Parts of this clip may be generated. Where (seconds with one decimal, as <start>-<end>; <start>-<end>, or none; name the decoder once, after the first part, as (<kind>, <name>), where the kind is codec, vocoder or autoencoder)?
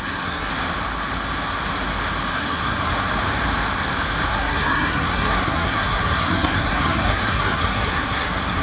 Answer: 0.0-0.5 (codec, SNAC); 2.3-2.9; 4.3-8.6